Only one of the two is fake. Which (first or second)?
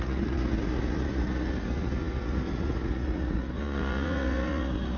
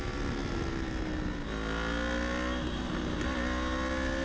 first